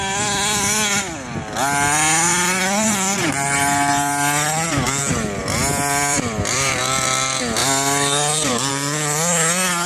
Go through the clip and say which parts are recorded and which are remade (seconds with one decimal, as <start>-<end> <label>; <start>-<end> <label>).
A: 0.0-2.3 recorded; 2.3-5.0 remade; 5.0-5.4 recorded; 5.4-6.8 remade; 6.8-7.6 recorded; 7.6-8.7 remade; 8.7-9.9 recorded